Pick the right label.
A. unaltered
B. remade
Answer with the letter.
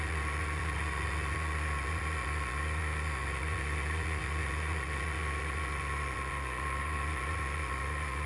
B